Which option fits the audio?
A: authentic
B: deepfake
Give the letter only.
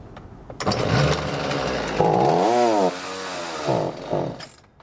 A